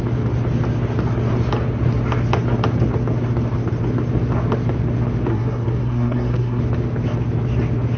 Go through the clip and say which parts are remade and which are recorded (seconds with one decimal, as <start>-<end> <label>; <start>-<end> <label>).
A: 0.0-5.3 recorded; 5.3-6.6 remade; 6.6-8.0 recorded